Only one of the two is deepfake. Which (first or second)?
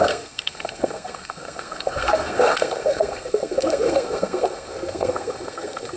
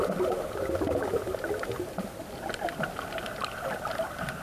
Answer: first